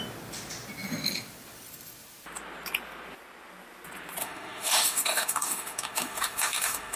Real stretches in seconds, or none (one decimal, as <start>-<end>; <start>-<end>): 0.0-4.2